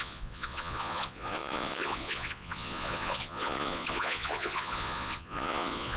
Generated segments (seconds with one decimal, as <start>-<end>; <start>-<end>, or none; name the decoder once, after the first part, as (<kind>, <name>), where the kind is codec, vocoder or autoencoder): 0.0-6.0 (vocoder, Vocos)